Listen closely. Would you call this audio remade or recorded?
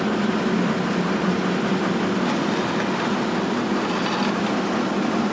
recorded